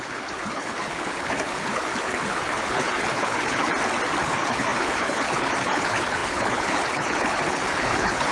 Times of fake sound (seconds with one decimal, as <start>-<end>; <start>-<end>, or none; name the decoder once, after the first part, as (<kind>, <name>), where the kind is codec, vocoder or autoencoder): 0.0-3.7 (codec, HILCodec); 4.2-8.3